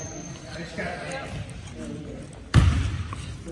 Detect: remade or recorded recorded